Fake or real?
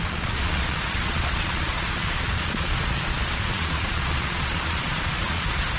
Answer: fake